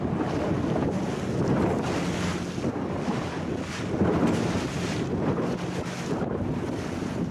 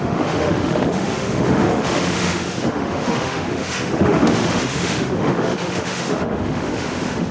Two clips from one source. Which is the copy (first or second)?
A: second